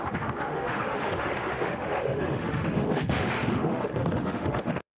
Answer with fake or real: fake